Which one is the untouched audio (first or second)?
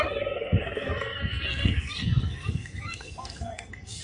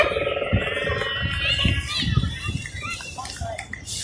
second